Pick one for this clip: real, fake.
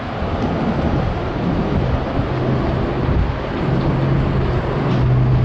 real